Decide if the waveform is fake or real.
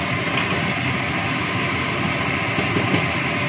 real